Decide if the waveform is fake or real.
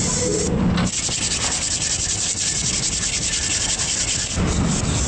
real